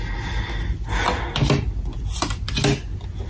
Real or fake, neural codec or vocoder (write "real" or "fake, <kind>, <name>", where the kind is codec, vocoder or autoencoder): real